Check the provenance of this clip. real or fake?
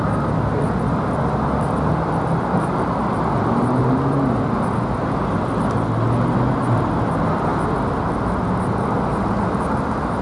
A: real